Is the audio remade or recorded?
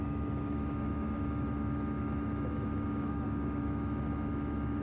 remade